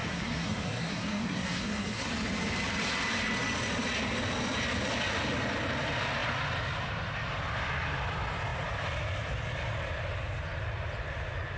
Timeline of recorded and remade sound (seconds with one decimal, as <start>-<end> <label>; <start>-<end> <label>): 0.0-2.1 remade; 2.1-11.6 recorded